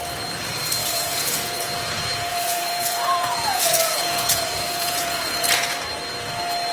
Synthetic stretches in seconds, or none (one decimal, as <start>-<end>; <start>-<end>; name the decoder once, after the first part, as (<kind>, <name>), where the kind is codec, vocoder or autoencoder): 0.8-1.7 (vocoder, Vocos); 2.3-5.8